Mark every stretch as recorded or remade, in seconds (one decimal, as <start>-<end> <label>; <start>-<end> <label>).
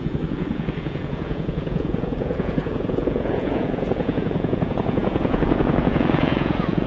0.0-6.9 remade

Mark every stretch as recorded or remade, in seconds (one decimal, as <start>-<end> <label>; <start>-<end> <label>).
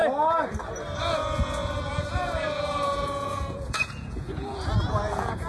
0.0-1.0 recorded; 1.0-5.5 remade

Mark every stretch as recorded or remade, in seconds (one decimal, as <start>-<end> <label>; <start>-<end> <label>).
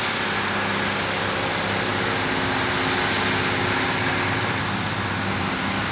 0.0-5.9 recorded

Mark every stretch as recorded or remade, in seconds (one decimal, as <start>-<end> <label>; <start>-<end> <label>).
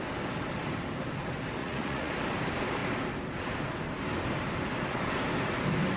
0.0-1.6 recorded; 1.6-2.1 remade; 2.1-6.0 recorded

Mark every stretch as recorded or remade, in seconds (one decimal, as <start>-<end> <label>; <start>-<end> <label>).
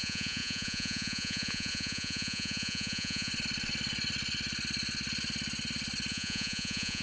0.0-3.3 remade; 3.3-6.1 recorded; 6.1-7.0 remade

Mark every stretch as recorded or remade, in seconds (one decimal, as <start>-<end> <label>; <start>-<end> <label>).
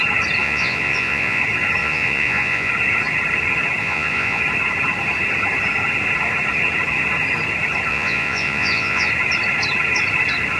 0.0-0.4 recorded; 0.4-1.4 remade; 1.4-1.8 recorded; 1.8-2.7 remade; 2.7-3.8 recorded; 3.8-4.4 remade; 4.4-7.9 recorded; 7.9-9.1 remade; 9.1-10.6 recorded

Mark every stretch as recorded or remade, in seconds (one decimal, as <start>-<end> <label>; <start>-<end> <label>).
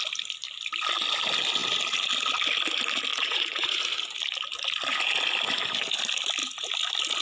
0.0-3.1 recorded; 3.1-3.8 remade; 3.8-7.2 recorded